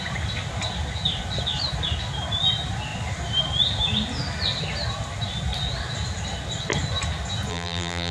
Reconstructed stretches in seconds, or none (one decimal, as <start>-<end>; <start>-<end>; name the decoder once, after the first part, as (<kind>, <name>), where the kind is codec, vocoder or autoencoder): 7.5-8.1 (vocoder, BigVGAN v2)

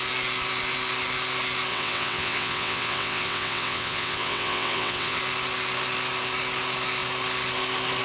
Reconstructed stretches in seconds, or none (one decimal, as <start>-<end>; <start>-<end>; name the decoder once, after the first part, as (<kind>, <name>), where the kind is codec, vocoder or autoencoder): 1.7-5.2 (vocoder, WaveNeXt)

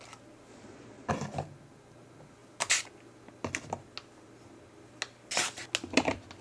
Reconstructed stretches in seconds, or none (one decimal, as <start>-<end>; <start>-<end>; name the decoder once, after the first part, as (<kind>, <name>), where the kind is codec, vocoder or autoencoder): 0.5-1.1 (vocoder, Vocos)

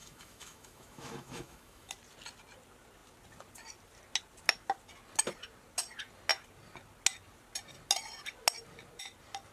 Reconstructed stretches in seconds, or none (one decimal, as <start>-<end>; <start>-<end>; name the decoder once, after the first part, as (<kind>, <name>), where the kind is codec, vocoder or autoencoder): 0.0-1.9 (autoencoder, DAC-VAE)

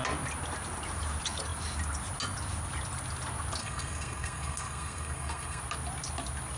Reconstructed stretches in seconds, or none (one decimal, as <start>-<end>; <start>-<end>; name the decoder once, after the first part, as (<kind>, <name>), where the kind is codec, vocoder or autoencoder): 3.6-5.6 (codec, SNAC)

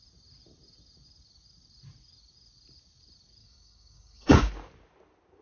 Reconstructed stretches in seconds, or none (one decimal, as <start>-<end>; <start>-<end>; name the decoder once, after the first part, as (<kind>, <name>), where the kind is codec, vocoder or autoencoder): 3.4-4.5 (codec, DAC)

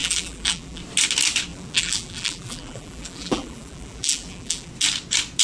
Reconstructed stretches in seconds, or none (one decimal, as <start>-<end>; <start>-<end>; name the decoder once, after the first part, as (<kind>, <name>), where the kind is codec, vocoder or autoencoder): 0.0-0.8 (vocoder, BigVGAN v2); 1.5-4.7

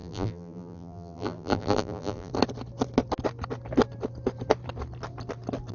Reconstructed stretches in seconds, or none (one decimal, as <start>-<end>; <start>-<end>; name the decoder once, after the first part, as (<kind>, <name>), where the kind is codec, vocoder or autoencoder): 0.0-2.3 (vocoder, BigVGAN v2)